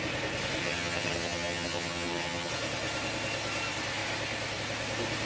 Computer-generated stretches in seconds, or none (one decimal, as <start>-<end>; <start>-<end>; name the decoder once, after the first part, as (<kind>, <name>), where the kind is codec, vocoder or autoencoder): 0.6-2.5 (vocoder, HiFi-GAN)